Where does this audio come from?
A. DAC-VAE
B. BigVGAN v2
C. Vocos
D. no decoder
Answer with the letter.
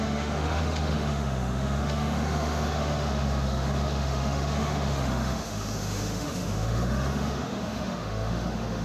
A